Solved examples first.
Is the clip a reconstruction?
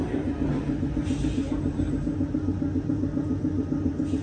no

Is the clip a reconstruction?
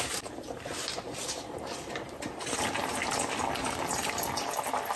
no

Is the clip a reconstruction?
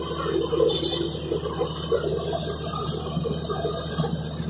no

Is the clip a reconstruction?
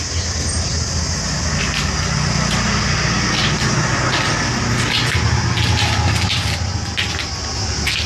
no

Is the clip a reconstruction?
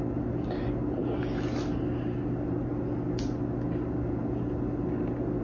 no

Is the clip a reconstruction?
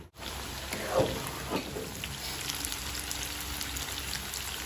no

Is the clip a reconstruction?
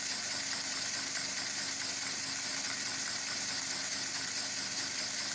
no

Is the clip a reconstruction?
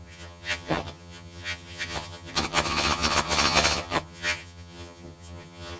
yes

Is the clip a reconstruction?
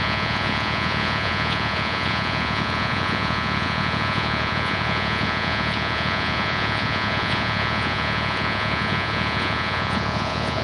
yes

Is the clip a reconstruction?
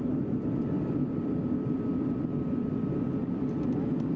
no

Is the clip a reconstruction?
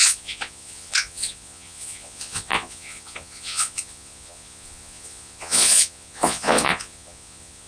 yes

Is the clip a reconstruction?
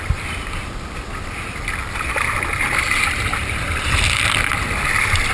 no